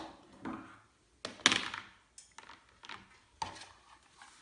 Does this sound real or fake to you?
real